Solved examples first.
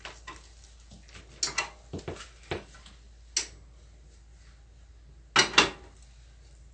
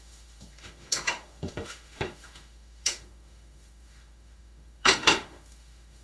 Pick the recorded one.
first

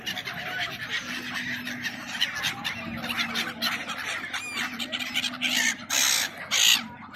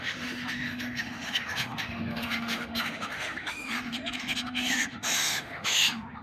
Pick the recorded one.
first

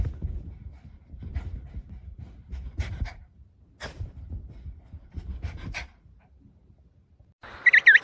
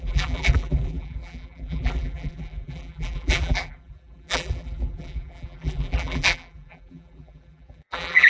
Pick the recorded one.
first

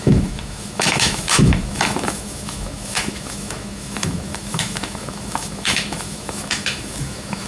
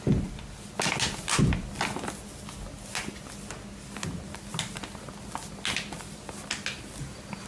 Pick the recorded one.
second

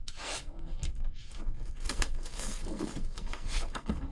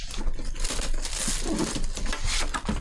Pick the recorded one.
second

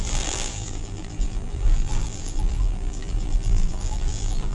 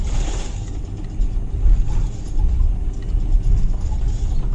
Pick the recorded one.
second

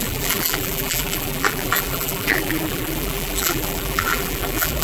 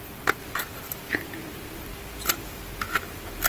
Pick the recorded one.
second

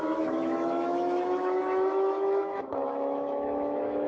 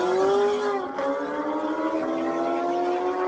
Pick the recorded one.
second